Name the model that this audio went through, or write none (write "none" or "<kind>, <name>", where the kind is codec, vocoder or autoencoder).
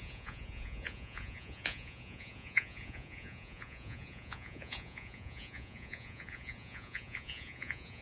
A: vocoder, Vocos